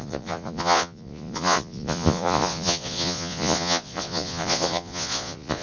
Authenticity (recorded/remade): remade